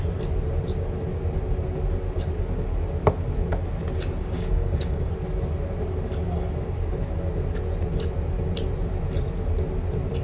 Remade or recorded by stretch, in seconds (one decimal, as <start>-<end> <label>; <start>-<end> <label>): 0.0-4.2 recorded; 4.2-5.1 remade; 5.1-10.2 recorded